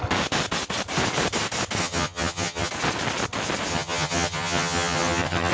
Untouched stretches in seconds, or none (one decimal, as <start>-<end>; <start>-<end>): 0.0-1.8; 2.7-3.7